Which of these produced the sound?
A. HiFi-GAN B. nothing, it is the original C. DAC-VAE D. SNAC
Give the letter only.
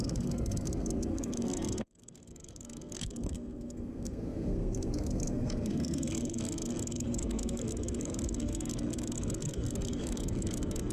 D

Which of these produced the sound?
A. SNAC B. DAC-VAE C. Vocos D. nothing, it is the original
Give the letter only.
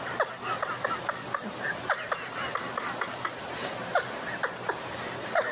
D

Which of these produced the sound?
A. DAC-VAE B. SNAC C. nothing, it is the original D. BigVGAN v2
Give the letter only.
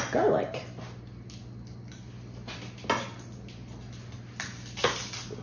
C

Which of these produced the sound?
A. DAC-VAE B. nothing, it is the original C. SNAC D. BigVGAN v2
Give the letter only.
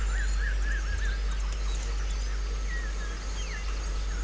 B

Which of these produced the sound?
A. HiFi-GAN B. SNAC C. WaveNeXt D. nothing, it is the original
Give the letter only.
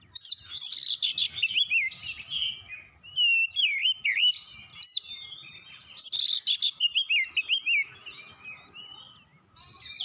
D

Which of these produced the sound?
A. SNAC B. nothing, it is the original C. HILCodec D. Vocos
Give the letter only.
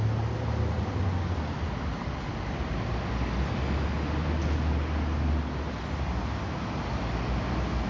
B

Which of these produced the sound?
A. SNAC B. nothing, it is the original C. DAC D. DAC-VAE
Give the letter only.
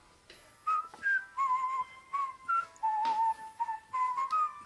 B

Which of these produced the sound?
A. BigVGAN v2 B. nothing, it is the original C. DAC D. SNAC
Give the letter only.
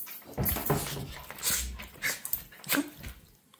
B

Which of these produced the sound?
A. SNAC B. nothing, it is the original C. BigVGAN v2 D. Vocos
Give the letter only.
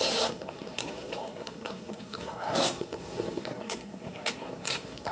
A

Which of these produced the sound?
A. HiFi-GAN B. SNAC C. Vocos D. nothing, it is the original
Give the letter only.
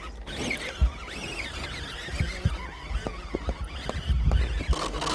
D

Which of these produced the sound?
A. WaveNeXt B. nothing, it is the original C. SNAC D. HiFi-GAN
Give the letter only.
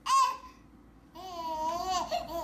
B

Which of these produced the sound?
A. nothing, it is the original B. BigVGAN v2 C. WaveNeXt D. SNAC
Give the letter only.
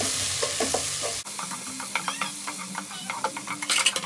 A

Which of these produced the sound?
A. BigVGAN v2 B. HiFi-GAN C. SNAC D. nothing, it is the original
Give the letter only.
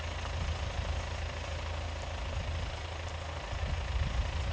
D